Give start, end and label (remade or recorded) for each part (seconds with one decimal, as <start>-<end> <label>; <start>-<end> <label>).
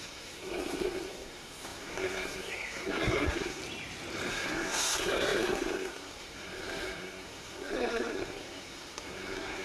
0.0-3.6 remade; 3.6-4.3 recorded; 4.3-9.6 remade